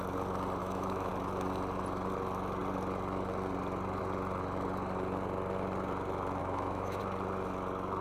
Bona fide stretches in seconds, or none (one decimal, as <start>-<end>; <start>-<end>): 0.0-0.6; 1.1-6.4; 7.0-8.0